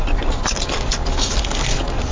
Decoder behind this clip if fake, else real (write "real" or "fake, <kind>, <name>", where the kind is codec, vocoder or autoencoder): real